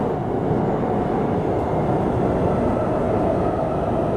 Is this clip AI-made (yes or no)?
no